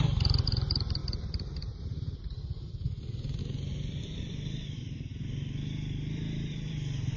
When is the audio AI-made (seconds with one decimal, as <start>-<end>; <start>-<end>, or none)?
0.0-5.1; 6.5-7.2